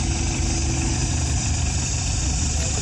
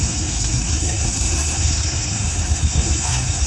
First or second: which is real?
first